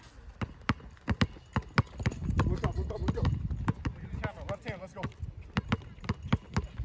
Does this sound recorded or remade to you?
recorded